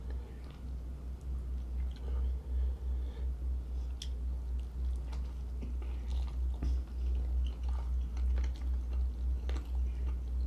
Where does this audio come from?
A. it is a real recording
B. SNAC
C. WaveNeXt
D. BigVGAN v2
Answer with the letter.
A